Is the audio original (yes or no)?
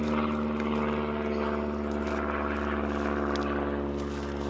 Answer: yes